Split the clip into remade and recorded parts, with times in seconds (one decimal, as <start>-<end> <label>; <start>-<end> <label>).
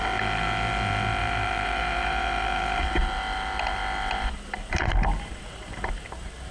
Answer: 0.0-1.2 recorded; 1.2-2.8 remade; 2.8-6.5 recorded